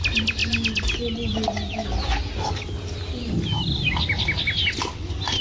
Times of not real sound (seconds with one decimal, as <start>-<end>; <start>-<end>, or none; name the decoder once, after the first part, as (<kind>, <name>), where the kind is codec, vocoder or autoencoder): none